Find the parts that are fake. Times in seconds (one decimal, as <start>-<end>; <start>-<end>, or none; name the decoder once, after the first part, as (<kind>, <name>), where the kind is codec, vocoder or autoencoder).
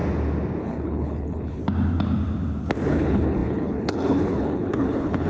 0.6-1.6 (codec, HILCodec); 2.9-5.3